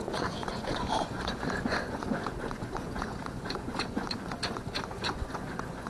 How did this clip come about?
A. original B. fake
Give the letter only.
B